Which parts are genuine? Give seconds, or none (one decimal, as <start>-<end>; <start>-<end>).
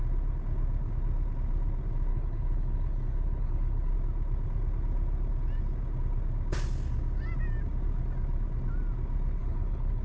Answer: 0.0-2.1; 3.9-9.4